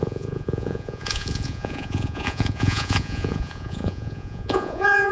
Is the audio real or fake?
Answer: fake